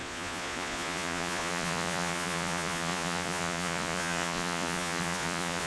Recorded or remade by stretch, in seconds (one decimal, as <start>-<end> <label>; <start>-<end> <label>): 0.0-5.7 remade